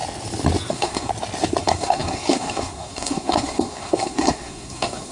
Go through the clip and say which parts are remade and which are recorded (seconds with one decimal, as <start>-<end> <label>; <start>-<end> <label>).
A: 0.0-0.7 recorded; 0.7-1.1 remade; 1.1-1.6 recorded; 1.6-5.1 remade